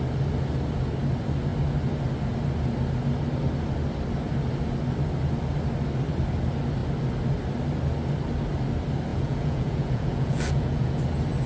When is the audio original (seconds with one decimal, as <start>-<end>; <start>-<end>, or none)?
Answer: 0.0-9.1; 11.0-11.5

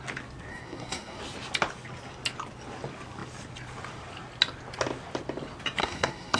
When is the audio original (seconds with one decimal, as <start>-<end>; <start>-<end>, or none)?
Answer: 0.0-0.5; 1.2-5.8

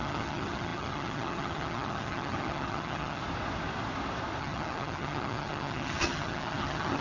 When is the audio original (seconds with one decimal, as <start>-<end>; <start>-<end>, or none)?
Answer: 3.2-4.4

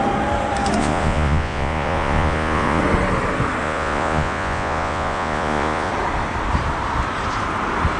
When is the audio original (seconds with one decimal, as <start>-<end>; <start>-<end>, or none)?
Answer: 0.0-0.8; 2.8-3.6; 5.9-8.0

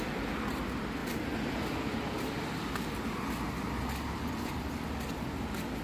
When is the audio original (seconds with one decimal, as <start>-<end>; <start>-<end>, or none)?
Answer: 0.0-5.8

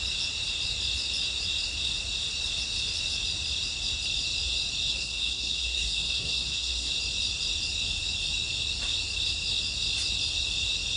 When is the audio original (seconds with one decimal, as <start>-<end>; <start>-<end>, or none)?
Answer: 0.0-4.9; 6.9-11.0

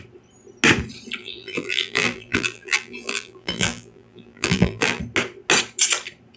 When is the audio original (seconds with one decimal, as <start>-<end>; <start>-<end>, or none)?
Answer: 0.0-1.2; 5.0-6.4

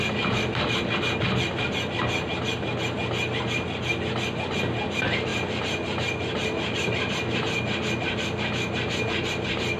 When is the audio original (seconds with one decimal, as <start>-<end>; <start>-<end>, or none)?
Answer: 0.0-9.8